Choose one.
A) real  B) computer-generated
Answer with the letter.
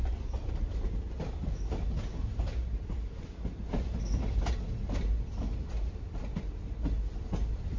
A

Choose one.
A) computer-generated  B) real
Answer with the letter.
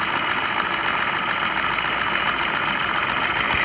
B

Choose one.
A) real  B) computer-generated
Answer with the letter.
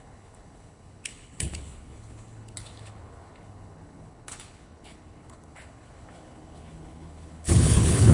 B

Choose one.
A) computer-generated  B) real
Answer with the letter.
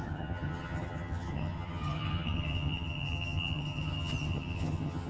A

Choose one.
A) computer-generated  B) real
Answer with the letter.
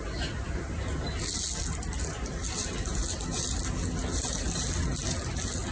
B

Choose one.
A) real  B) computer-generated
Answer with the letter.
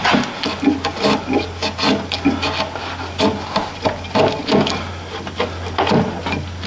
A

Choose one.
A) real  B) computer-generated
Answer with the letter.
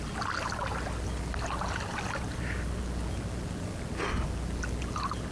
A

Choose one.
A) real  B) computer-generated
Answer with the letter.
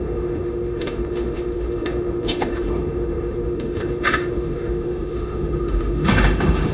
B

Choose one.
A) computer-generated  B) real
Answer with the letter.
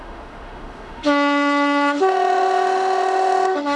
A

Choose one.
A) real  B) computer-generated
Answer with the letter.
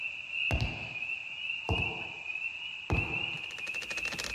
A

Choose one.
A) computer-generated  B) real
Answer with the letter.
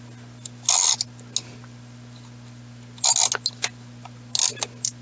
B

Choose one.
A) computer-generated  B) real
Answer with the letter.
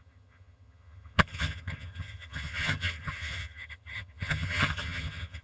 A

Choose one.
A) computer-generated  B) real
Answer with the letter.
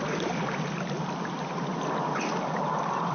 B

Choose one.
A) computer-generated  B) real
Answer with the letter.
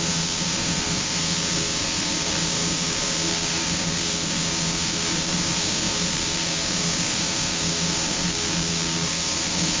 A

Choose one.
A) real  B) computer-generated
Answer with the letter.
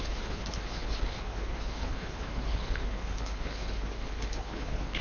B